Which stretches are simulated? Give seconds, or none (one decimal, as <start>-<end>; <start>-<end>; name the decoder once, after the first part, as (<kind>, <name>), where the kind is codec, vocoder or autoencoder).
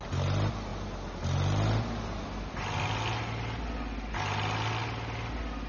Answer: none